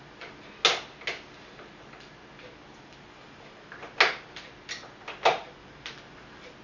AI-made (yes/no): no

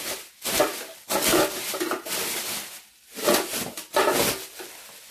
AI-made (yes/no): no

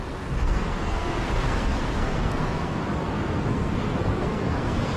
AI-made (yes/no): yes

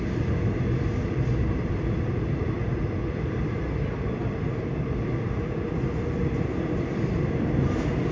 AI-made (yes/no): no